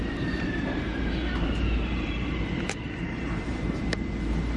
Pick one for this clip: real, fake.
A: fake